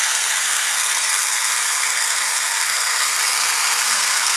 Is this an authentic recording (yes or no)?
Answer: no